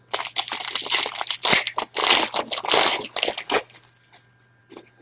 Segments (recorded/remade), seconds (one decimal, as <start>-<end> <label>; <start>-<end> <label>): 0.0-5.0 recorded

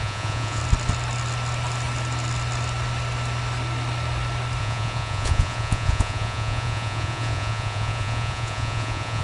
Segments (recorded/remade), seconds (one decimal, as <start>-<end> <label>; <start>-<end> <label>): 0.0-0.6 remade; 0.6-4.6 recorded; 4.6-9.2 remade

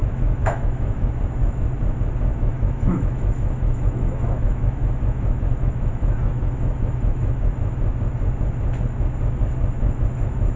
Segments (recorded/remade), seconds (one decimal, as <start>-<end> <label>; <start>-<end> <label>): 0.0-1.1 remade; 1.1-2.3 recorded; 2.3-7.5 remade; 7.5-10.6 recorded

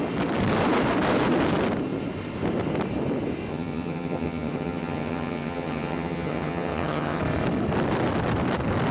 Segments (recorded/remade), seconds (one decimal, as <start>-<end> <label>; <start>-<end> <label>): 0.0-3.5 recorded; 3.5-7.2 remade; 7.2-8.9 recorded

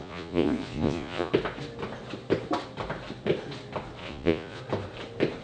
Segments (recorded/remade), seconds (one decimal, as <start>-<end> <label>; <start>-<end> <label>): 0.0-1.3 remade; 1.3-4.0 recorded; 4.0-4.6 remade; 4.6-5.4 recorded

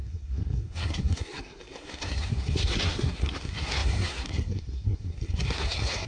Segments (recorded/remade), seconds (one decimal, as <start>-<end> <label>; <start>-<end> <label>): 0.0-6.1 remade